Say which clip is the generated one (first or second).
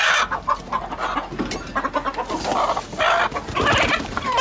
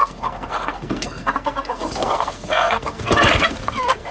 second